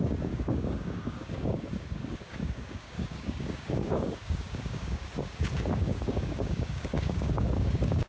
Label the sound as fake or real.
fake